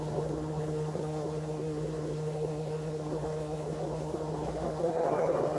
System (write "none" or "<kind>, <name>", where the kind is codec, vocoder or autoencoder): codec, SNAC